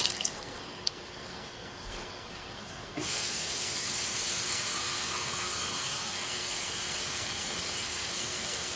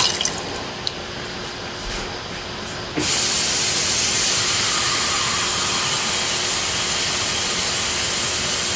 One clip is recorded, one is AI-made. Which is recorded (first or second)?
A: second